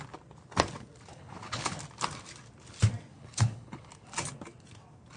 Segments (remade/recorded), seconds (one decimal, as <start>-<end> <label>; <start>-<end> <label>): 0.0-1.1 recorded; 1.1-1.8 remade; 1.8-3.1 recorded; 3.1-3.9 remade; 3.9-5.2 recorded